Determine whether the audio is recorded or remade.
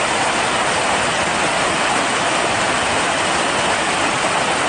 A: remade